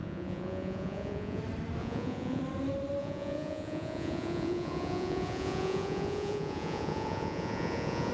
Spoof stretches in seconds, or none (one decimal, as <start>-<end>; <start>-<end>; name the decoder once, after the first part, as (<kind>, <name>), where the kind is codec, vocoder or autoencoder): 0.0-1.4 (vocoder, Vocos); 1.8-2.4; 3.0-8.1